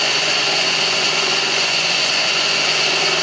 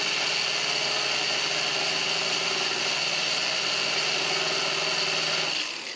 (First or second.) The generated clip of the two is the first